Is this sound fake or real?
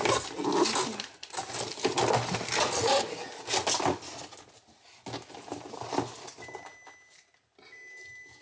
real